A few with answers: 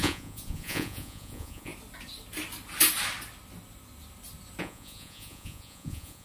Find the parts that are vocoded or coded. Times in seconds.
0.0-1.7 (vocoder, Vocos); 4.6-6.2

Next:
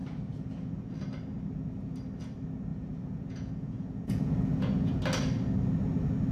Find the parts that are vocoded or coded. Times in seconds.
0.0-0.9 (vocoder, Vocos); 2.7-5.0

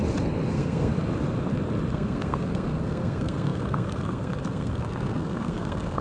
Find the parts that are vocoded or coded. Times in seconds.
0.5-0.9 (codec, SNAC); 1.9-6.0

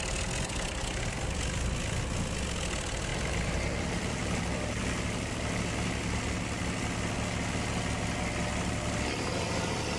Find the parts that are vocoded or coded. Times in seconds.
3.1-5.3 (vocoder, BigVGAN v2)

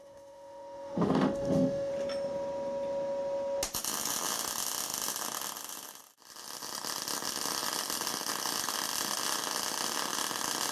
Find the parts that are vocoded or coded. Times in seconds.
0.0-1.9 (autoencoder, DAC-VAE)

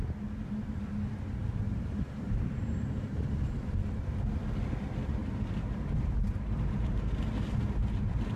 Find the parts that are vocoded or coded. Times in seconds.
1.4-4.0 (vocoder, BigVGAN v2); 5.2-7.1

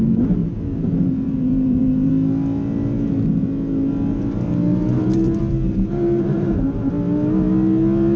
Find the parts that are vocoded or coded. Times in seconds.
0.4-2.1 (vocoder, BigVGAN v2); 4.7-5.4; 5.9-6.9

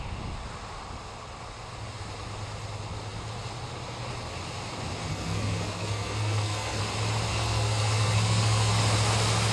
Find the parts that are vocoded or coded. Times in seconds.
5.1-6.8 (codec, SNAC); 7.3-8.8